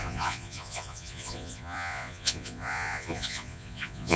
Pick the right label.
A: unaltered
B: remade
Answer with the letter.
B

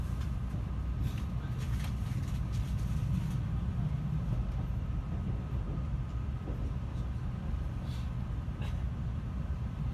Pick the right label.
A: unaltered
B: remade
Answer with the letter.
A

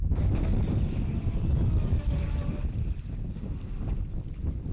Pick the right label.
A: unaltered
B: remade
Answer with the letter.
A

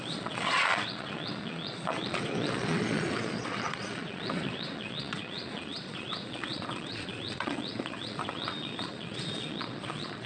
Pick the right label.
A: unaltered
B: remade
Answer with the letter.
B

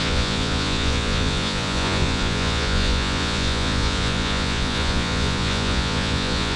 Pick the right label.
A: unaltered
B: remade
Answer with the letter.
B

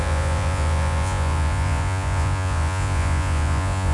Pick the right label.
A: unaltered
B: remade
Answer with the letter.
B